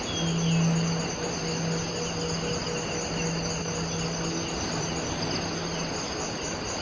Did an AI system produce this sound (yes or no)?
no